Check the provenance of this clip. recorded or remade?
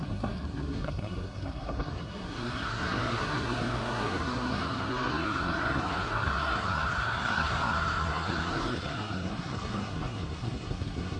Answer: remade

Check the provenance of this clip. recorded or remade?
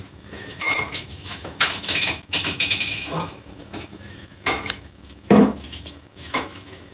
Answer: remade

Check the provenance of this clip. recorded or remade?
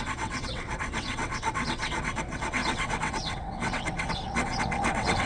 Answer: remade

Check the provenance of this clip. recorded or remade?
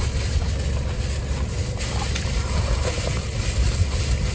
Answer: recorded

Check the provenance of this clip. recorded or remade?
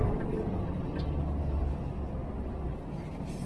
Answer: recorded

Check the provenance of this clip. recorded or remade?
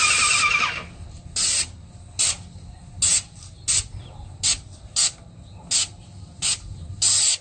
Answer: recorded